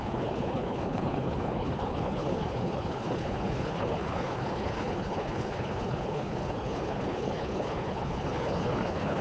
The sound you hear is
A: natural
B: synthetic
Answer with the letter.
B